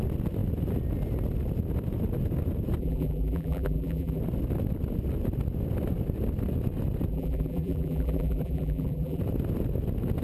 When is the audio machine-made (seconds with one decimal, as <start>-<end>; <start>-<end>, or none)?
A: 2.8-4.2; 7.1-9.2